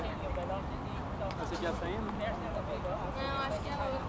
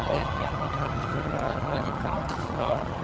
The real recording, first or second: first